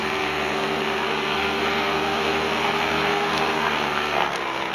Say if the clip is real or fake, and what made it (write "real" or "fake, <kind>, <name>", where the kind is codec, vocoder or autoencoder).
fake, codec, SNAC